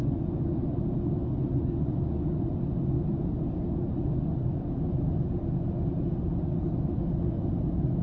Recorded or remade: recorded